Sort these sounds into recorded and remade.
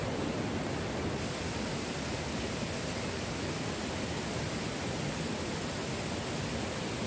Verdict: recorded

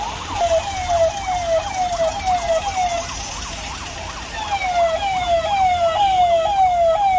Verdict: recorded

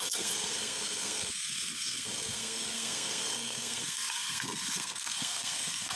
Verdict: remade